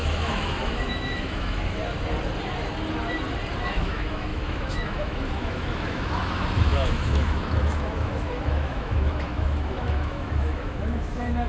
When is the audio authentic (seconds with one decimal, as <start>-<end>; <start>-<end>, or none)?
1.8-3.6